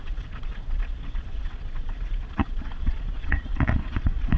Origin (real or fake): fake